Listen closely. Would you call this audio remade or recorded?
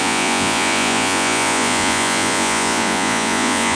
remade